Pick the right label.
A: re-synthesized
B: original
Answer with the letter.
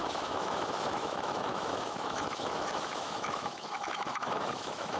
A